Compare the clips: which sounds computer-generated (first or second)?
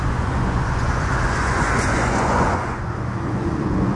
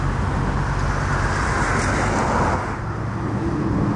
first